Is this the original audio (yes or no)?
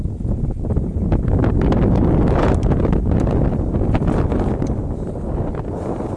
yes